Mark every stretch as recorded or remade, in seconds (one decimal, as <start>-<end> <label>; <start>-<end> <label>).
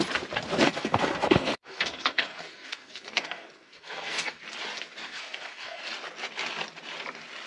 0.0-0.6 recorded; 0.6-4.4 remade; 4.4-5.0 recorded; 5.0-5.8 remade; 5.8-7.5 recorded